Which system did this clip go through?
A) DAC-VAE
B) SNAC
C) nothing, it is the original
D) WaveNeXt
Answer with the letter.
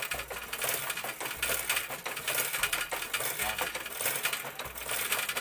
C